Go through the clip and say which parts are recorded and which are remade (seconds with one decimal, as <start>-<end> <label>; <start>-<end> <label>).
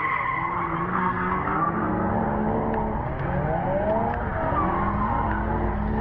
0.0-0.9 recorded; 0.9-2.1 remade; 2.1-6.0 recorded